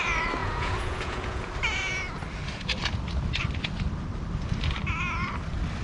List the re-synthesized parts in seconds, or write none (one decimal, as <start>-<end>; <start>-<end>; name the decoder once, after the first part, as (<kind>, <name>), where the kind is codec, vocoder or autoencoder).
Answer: 0.4-1.5 (vocoder, Vocos)